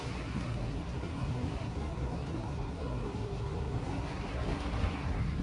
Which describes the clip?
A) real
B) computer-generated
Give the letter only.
B